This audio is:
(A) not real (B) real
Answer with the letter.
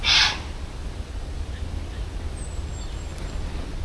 B